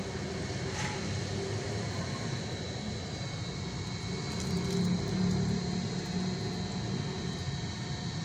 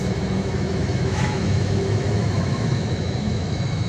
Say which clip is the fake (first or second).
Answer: second